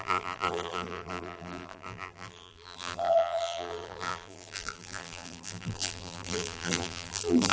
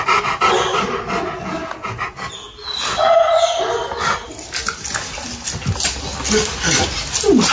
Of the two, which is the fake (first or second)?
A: first